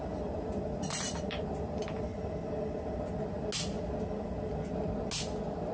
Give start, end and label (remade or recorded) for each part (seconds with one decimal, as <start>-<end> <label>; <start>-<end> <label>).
0.0-2.1 remade; 2.1-5.7 recorded

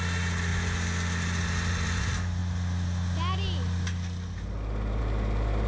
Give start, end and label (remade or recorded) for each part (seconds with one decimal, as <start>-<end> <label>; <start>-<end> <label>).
0.0-5.7 recorded

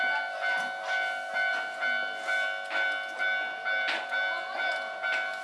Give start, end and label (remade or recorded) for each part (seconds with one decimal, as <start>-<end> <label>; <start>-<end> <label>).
0.0-5.4 recorded

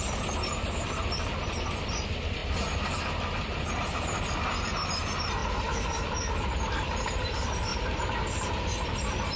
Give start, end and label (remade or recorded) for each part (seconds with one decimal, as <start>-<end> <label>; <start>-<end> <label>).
0.0-2.4 remade; 2.4-3.6 recorded; 3.6-9.4 remade

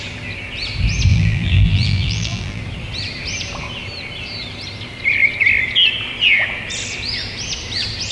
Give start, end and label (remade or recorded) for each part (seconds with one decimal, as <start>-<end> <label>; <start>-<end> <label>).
0.0-1.1 recorded; 1.1-2.6 remade; 2.6-8.1 recorded

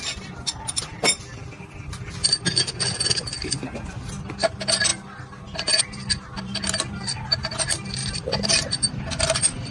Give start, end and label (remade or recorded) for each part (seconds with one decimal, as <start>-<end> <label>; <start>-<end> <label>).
0.0-8.0 recorded; 8.0-9.7 remade

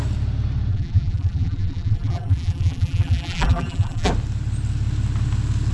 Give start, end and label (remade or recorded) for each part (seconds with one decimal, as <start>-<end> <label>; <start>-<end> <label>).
0.0-0.7 recorded; 0.7-4.1 remade; 4.1-5.7 recorded